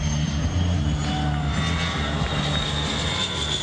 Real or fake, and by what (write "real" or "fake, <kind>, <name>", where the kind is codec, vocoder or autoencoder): real